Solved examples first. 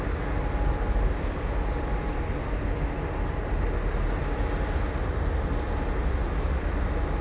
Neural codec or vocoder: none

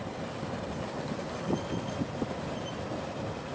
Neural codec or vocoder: none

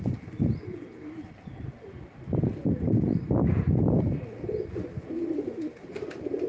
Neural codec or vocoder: none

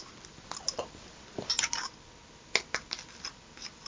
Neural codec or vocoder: none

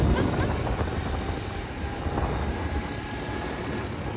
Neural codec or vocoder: none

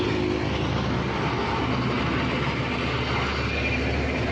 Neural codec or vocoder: none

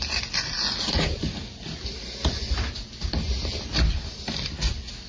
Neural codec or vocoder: none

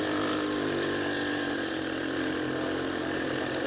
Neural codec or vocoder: none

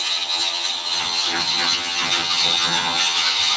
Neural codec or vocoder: vocoder, HiFi-GAN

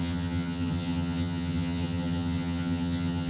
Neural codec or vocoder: vocoder, HiFi-GAN